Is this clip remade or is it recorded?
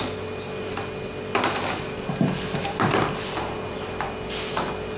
recorded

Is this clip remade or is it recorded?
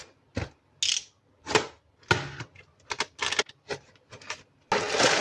recorded